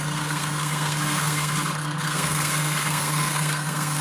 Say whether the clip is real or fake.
fake